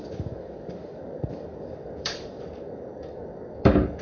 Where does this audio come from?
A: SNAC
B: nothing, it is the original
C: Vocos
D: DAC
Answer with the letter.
D